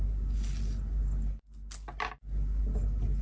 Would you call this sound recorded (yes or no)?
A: yes